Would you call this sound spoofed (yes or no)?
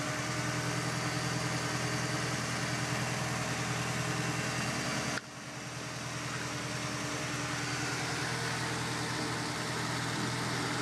no